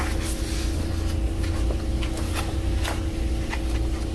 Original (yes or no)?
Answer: yes